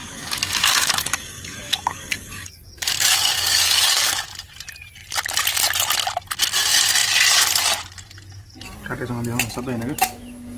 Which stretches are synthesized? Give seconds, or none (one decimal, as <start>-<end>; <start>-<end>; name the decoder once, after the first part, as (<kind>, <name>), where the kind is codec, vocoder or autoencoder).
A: 0.0-4.1 (codec, DAC)